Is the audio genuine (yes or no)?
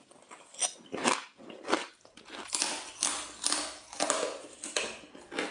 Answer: yes